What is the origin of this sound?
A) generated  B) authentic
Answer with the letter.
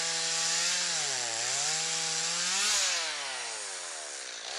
B